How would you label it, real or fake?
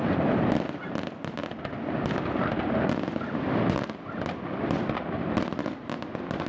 real